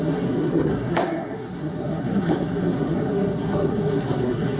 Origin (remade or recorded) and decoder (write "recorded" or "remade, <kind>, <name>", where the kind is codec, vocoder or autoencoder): remade, codec, SNAC